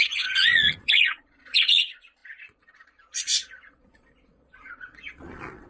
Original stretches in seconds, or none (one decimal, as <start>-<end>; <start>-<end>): none